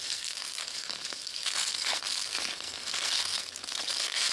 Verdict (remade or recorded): remade